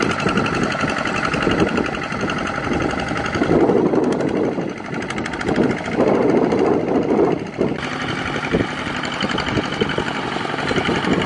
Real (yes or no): yes